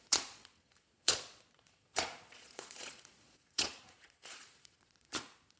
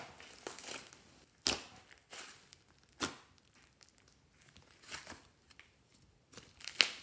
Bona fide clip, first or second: second